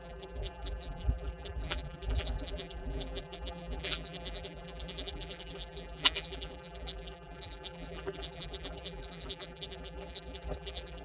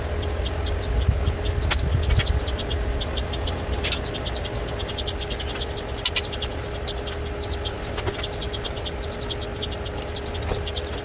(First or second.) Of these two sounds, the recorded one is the second